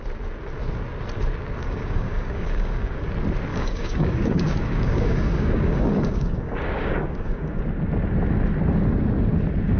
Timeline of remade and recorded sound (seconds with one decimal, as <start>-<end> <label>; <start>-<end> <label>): 0.0-1.6 recorded; 1.6-3.1 remade; 3.1-3.5 recorded; 3.5-7.6 remade; 7.6-9.8 recorded